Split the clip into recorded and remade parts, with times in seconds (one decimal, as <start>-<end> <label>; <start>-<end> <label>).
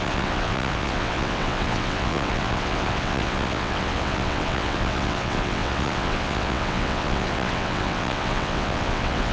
0.0-9.3 remade